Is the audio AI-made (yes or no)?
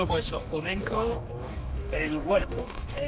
yes